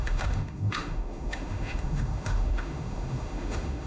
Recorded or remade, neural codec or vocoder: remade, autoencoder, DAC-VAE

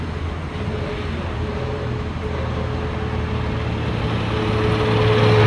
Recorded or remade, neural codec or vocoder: recorded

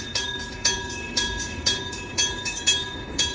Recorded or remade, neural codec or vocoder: remade, codec, DAC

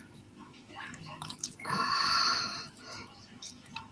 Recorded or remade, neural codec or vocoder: remade, autoencoder, DAC-VAE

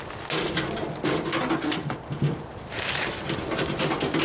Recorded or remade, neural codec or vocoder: recorded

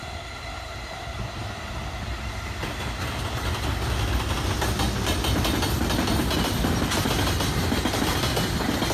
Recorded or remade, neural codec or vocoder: recorded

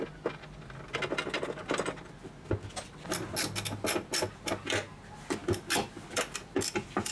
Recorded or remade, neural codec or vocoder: recorded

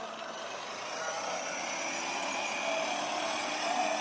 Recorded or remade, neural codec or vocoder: recorded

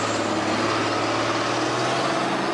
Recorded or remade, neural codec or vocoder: recorded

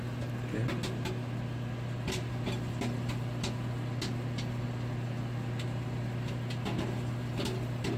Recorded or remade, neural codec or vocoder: recorded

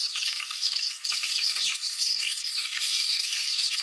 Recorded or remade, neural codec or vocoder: remade, codec, DAC